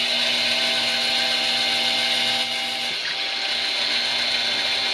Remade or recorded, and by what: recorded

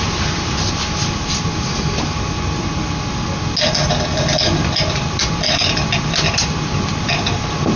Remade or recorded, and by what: recorded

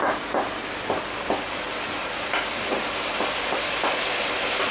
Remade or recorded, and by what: recorded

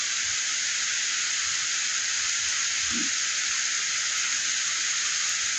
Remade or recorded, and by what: recorded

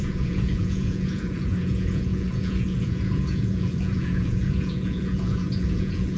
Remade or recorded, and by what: remade, vocoder, Vocos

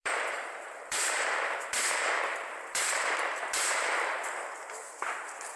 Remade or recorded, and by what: remade, vocoder, BigVGAN v2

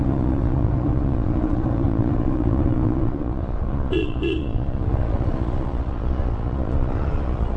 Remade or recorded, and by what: remade, vocoder, Vocos